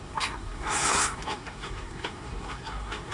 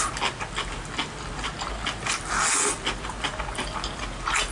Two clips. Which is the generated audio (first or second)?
first